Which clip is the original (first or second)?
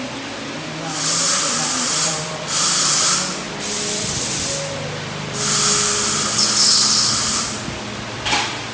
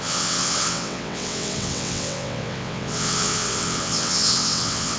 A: first